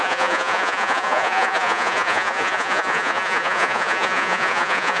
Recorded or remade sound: remade